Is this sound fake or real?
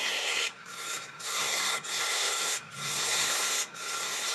fake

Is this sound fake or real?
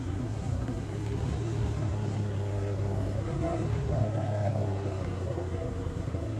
fake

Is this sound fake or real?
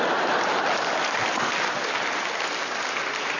real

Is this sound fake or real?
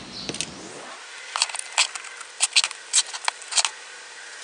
real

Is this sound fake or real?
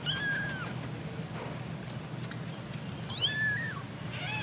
real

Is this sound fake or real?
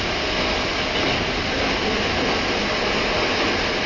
real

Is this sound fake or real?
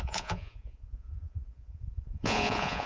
fake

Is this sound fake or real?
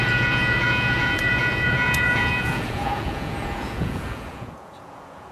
fake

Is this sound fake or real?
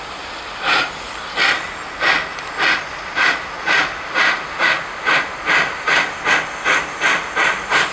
real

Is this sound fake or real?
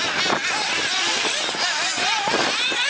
real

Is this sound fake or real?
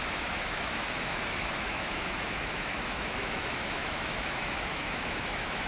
fake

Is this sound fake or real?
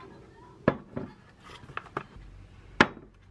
real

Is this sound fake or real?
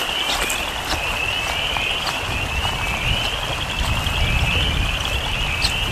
real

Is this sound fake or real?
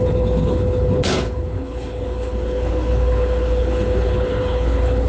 fake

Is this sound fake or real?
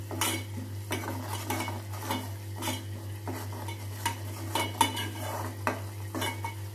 real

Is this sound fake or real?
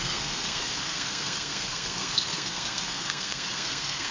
fake